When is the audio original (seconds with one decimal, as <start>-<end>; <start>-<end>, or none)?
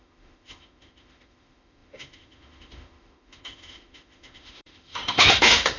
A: none